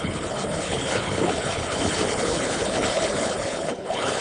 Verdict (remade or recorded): remade